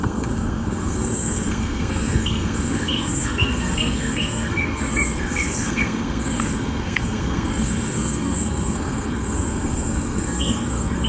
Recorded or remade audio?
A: remade